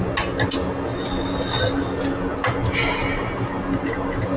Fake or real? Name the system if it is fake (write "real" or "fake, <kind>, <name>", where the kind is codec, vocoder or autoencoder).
real